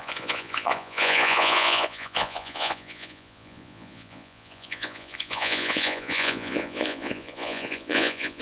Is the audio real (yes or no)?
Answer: no